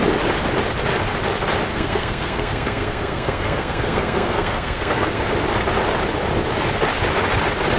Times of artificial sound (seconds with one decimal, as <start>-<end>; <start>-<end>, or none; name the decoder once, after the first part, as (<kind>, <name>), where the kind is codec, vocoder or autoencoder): 1.7-5.2 (codec, SNAC)